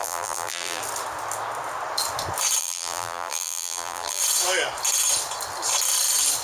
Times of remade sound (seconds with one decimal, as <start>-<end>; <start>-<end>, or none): 0.0-0.8; 2.6-4.2